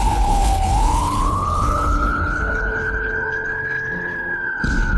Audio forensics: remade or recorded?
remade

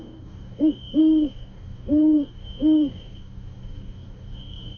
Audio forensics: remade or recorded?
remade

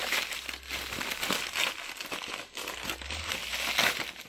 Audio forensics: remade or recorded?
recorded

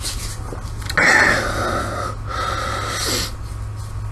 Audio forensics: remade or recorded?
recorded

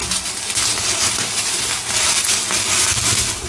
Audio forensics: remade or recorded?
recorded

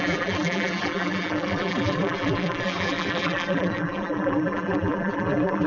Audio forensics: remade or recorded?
remade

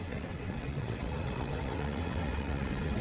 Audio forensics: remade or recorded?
remade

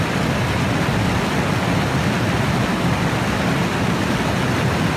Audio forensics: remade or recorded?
recorded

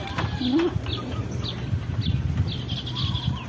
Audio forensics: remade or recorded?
recorded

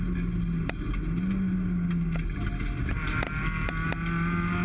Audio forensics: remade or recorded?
recorded